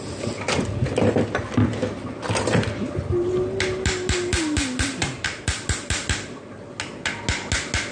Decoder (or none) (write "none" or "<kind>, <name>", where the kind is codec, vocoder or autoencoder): none